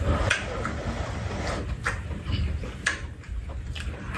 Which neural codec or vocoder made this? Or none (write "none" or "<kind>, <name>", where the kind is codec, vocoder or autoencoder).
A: none